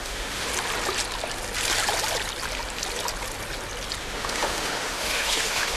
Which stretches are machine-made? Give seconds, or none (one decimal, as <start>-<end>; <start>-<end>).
0.0-0.5; 4.0-5.8